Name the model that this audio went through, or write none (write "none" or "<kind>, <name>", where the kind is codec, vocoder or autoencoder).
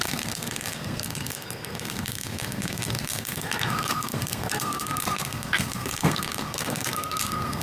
codec, SNAC